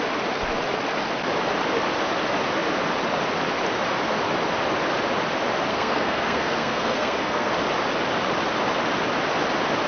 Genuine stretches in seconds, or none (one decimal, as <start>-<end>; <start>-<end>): 0.0-5.7; 7.5-9.9